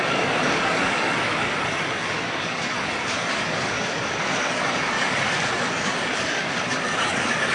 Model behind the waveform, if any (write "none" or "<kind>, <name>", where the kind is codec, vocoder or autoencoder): codec, DAC